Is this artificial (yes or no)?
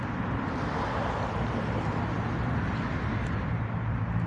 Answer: yes